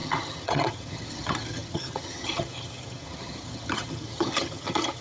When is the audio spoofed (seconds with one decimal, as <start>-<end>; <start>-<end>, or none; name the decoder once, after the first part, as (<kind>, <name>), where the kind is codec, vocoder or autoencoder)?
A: 0.0-5.0 (vocoder, HiFi-GAN)